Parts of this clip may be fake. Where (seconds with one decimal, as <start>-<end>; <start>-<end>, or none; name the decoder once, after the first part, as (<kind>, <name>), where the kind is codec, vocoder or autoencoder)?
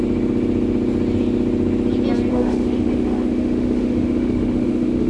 2.3-5.1 (autoencoder, DAC-VAE)